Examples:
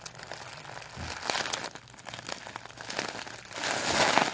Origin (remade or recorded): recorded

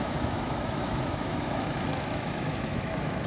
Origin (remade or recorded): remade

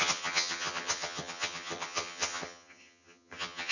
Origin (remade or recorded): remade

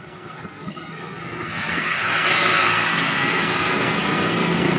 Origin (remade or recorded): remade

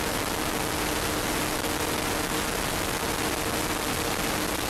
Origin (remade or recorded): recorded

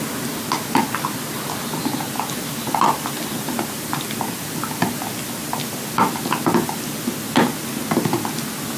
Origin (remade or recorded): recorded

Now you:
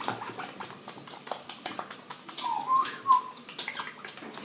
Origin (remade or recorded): recorded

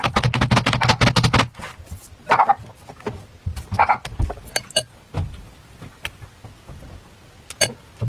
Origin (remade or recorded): recorded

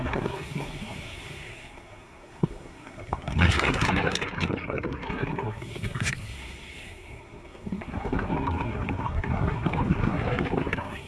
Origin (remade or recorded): remade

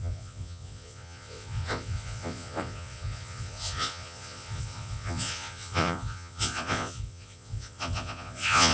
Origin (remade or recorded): remade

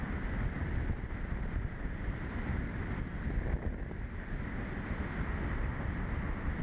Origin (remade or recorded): recorded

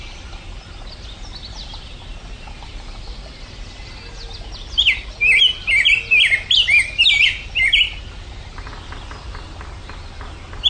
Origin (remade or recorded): recorded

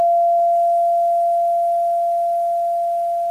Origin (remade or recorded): recorded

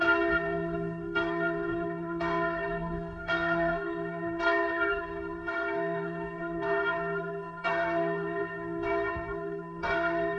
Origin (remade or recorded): remade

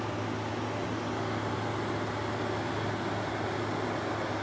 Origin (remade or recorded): recorded